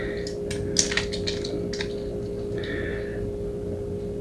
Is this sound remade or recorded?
recorded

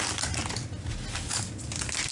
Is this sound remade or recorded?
recorded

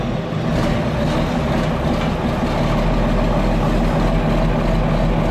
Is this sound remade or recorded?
recorded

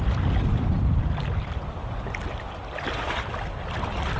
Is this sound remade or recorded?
recorded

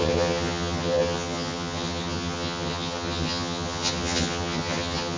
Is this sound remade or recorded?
remade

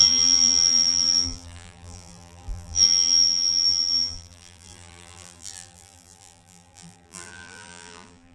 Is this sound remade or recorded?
remade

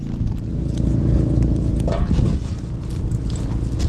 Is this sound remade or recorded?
recorded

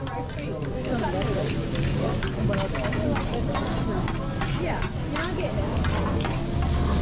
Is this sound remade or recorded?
recorded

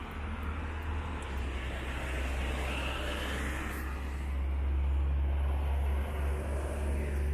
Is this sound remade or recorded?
recorded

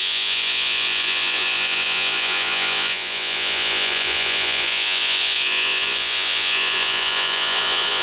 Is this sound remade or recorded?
remade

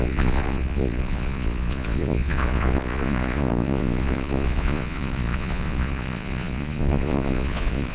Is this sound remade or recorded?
remade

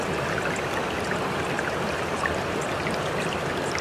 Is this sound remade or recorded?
recorded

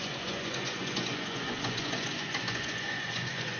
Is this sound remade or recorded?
remade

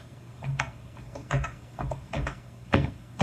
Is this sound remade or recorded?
remade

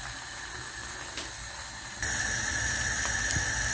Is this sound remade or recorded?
recorded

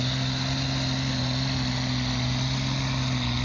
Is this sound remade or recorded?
recorded